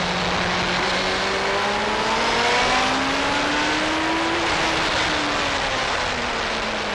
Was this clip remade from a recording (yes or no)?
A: no